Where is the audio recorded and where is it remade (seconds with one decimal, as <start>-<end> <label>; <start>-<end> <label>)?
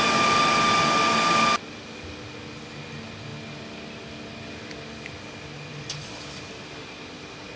0.0-7.6 recorded